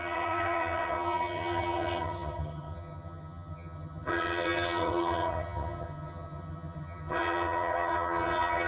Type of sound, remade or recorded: remade